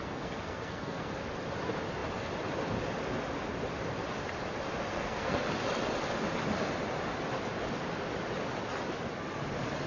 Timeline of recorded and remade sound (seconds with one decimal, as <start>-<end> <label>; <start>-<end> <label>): 0.0-1.1 remade; 1.1-4.9 recorded; 4.9-5.4 remade; 5.4-9.9 recorded